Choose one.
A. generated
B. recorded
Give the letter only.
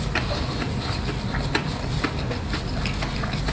B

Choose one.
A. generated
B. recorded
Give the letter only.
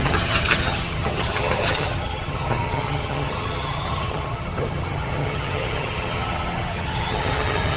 A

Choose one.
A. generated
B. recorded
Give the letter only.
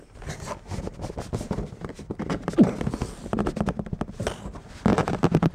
B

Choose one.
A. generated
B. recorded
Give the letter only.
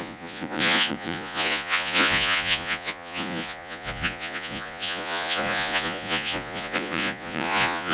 A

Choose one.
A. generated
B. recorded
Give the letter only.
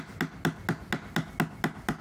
B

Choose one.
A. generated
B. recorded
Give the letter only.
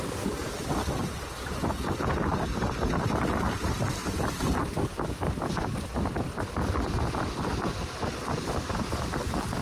B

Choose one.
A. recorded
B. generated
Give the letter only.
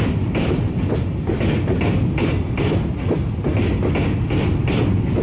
A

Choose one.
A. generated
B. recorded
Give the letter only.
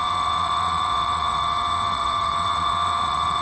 A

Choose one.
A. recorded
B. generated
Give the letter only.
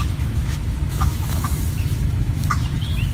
B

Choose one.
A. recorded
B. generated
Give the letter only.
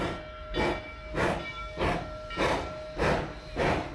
A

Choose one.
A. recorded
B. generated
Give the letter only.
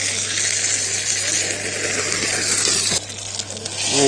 A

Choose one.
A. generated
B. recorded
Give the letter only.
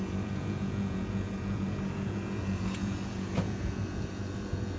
A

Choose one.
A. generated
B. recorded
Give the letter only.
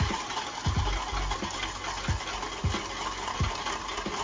B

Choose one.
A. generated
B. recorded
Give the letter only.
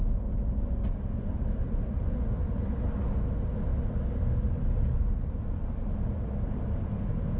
B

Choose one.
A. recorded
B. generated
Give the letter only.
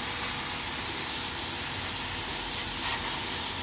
A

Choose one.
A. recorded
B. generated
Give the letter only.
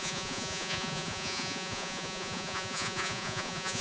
B